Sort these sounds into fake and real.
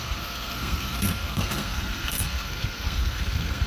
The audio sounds fake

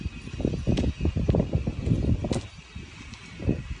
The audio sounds real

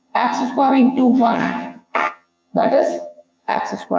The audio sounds fake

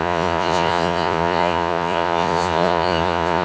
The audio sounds fake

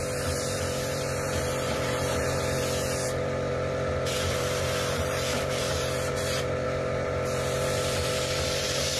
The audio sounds fake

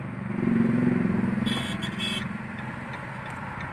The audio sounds real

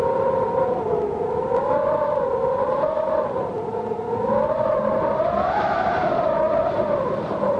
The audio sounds real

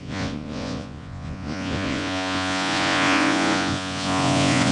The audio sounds fake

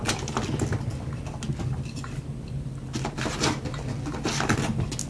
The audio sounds real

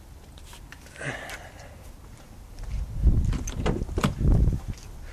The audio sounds real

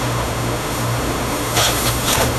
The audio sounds fake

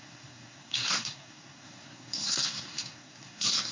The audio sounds fake